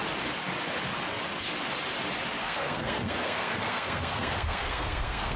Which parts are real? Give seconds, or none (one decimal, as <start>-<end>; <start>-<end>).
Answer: 0.0-2.4